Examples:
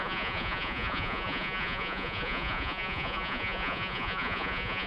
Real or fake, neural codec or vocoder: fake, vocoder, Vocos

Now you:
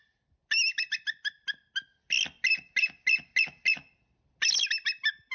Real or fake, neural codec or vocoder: real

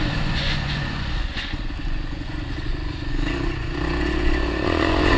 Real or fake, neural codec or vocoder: fake, vocoder, Vocos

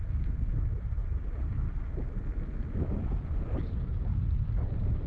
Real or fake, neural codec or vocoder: real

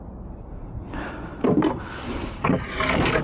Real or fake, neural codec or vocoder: real